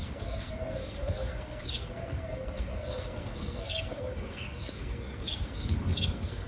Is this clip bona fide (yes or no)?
no